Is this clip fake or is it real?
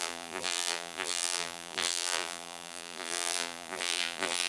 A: fake